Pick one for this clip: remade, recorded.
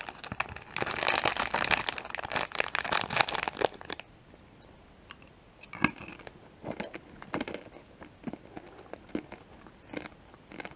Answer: recorded